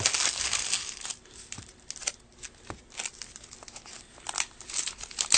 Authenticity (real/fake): real